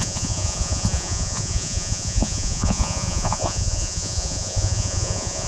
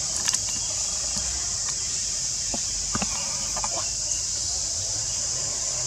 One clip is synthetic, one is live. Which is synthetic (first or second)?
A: first